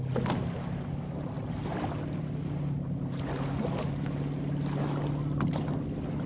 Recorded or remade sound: recorded